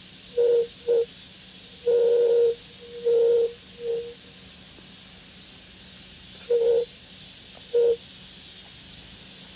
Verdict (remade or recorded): recorded